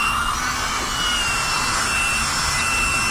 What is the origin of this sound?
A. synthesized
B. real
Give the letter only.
B